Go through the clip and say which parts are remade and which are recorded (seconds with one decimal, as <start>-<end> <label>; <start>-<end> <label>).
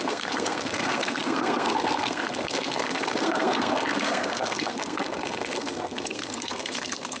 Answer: 0.0-7.2 remade